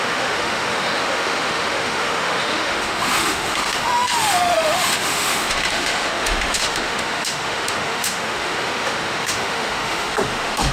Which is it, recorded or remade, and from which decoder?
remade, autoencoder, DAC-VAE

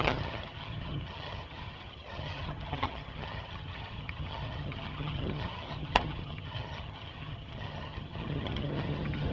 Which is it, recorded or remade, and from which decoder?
remade, vocoder, HiFi-GAN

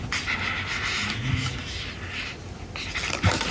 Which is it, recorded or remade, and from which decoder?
recorded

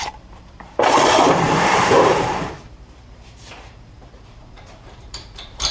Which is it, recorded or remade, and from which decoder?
remade, vocoder, BigVGAN v2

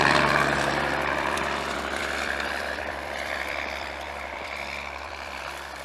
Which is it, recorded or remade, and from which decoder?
remade, vocoder, BigVGAN v2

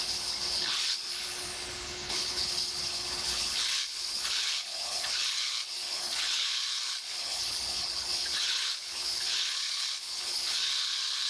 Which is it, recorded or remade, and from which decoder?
remade, codec, HILCodec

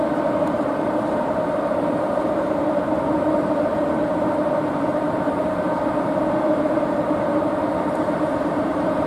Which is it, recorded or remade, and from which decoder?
remade, vocoder, BigVGAN v2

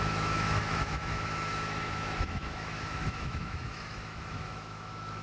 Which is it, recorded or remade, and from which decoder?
remade, autoencoder, DAC-VAE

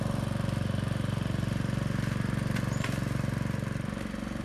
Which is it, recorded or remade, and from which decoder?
recorded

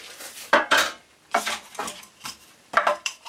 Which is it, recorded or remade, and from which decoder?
remade, vocoder, BigVGAN v2